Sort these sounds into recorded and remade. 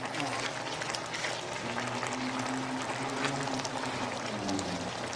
recorded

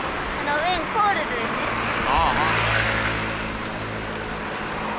recorded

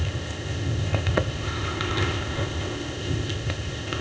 remade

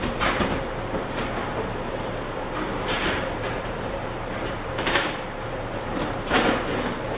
remade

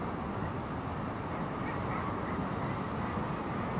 recorded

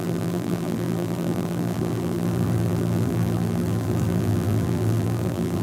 remade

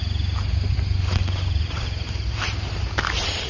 recorded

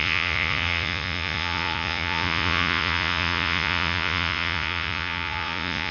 remade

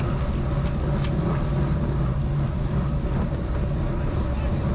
recorded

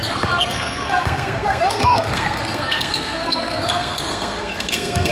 remade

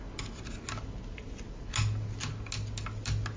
recorded